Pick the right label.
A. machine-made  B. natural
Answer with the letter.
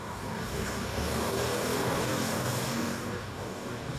A